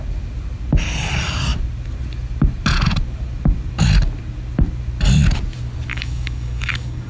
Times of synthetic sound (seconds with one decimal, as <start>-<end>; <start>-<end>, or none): 5.9-7.1